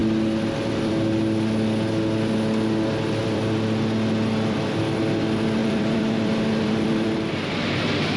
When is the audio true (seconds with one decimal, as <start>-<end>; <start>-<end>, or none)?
0.0-3.2; 4.8-5.6; 7.2-8.2